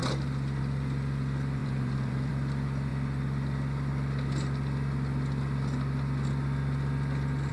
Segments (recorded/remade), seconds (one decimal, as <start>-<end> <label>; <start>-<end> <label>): 0.0-1.6 recorded; 1.6-2.3 remade; 2.3-7.5 recorded